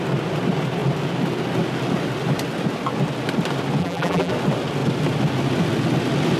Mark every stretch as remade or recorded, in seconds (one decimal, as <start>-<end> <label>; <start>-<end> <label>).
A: 0.0-3.8 recorded; 3.8-4.3 remade; 4.3-6.4 recorded